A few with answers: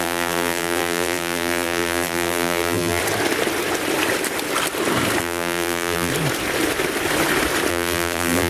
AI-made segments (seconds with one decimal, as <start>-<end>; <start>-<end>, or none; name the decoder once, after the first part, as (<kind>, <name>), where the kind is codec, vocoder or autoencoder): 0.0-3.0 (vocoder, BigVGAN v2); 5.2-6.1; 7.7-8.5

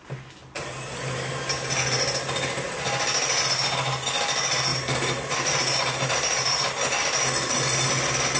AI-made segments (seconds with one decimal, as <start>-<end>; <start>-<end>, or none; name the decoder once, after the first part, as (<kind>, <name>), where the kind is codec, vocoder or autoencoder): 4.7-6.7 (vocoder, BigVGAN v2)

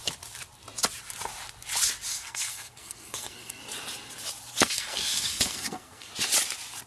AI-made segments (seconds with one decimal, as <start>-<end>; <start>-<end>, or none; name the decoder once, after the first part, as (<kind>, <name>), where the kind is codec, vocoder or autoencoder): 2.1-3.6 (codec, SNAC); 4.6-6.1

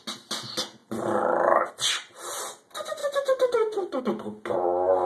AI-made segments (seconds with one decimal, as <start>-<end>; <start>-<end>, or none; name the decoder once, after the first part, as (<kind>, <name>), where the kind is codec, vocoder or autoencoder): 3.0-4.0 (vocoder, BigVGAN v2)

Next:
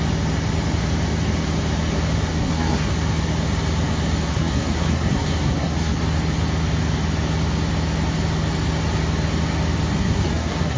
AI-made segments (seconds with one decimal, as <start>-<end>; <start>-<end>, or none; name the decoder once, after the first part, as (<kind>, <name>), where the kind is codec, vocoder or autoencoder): 2.3-2.9 (codec, SNAC); 4.3-6.0; 10.0-10.8